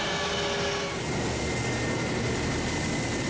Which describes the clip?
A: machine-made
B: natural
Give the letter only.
B